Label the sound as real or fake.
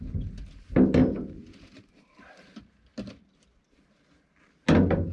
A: real